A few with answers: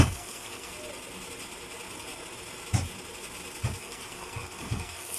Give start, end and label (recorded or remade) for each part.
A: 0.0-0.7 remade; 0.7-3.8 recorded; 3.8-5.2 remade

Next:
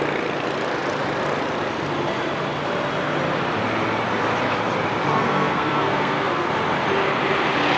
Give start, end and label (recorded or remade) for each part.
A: 0.0-5.2 recorded; 5.2-6.5 remade; 6.5-7.8 recorded

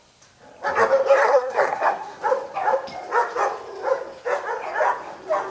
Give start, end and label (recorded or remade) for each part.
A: 0.0-1.2 recorded; 1.2-2.2 remade; 2.2-5.5 recorded

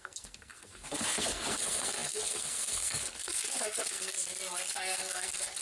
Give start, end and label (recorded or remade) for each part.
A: 0.0-5.6 remade